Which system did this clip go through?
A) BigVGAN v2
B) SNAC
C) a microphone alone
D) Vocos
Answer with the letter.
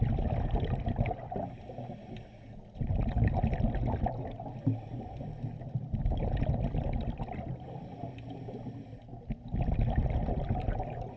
C